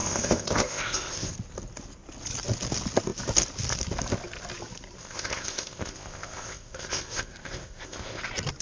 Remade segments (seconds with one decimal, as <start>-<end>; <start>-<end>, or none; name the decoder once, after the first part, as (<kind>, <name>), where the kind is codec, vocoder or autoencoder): 0.0-1.3 (codec, ZipCodec); 5.0-8.2